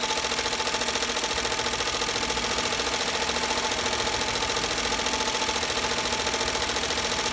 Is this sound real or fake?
real